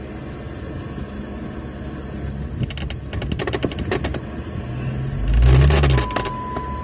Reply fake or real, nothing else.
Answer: real